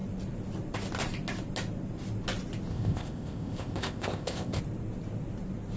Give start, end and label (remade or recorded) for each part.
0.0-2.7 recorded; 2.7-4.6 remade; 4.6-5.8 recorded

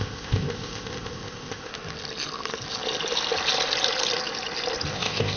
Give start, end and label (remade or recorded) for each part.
0.0-1.7 remade; 1.7-4.9 recorded; 4.9-5.4 remade

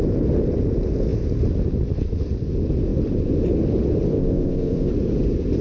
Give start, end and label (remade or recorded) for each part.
0.0-4.1 recorded; 4.1-4.9 remade; 4.9-5.6 recorded

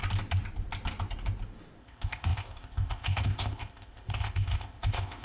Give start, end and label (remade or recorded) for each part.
0.0-1.8 recorded; 1.8-5.2 remade

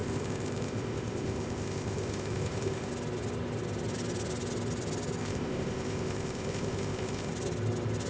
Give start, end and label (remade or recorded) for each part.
0.0-2.9 remade; 2.9-5.2 recorded; 5.2-7.3 remade; 7.3-8.1 recorded